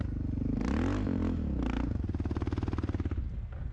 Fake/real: real